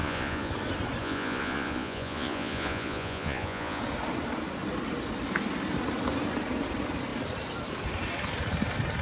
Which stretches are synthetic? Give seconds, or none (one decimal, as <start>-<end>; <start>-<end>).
0.0-0.5; 1.0-3.8

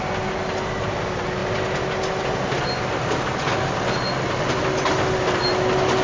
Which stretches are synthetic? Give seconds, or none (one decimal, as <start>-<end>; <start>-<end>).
none

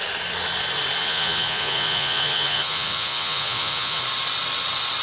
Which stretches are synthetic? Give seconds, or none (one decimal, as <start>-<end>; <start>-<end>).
1.0-4.0

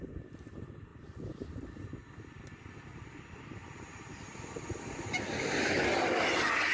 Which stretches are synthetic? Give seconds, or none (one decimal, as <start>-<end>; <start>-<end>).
none

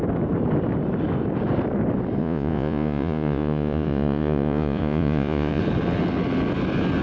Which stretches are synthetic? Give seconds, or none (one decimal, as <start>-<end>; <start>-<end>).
2.2-5.6

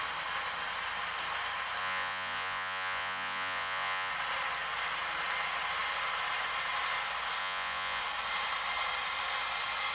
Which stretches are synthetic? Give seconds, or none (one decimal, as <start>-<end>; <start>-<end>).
1.8-4.1; 7.4-8.0

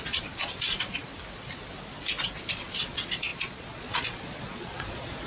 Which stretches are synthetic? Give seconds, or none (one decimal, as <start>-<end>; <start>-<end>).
0.0-1.0; 2.5-5.3

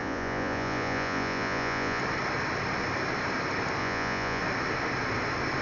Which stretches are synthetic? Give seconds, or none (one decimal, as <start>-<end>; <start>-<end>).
0.0-2.0; 3.8-4.4